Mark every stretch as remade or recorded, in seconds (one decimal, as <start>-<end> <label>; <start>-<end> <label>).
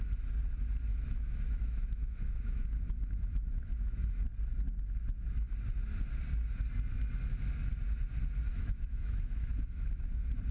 0.0-0.9 recorded; 0.9-4.2 remade; 4.2-8.5 recorded; 8.5-10.0 remade; 10.0-10.5 recorded